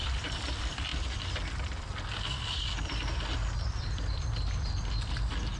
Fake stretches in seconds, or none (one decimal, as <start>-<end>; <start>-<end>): 0.0-0.9; 3.7-5.6

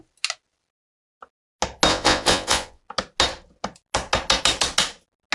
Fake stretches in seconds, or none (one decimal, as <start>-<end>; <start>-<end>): 1.9-2.8

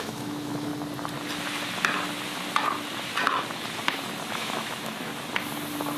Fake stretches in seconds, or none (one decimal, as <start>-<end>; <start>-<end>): 0.0-0.7; 4.3-5.1